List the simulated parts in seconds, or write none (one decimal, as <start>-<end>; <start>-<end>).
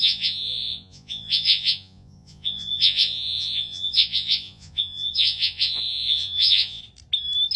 0.0-6.8